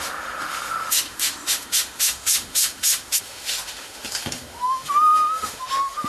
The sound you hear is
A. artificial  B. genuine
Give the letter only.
A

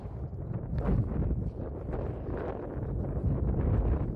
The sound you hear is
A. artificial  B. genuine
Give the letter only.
B